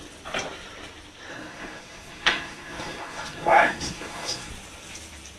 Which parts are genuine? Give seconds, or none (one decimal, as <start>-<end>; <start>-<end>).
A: 0.0-1.3; 4.5-5.4